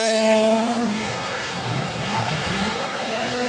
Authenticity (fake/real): fake